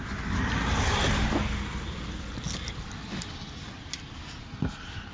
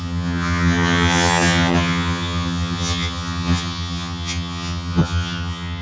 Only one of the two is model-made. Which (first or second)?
second